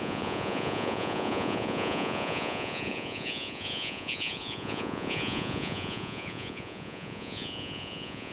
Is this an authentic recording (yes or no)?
no